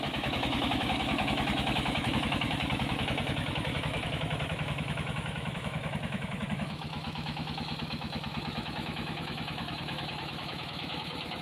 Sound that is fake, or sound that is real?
fake